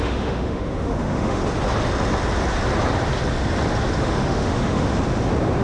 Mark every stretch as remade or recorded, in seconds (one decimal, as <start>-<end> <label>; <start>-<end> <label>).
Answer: 0.0-1.4 remade; 1.4-4.0 recorded; 4.0-4.9 remade; 4.9-5.6 recorded